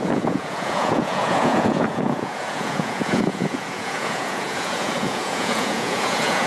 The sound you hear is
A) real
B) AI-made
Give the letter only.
B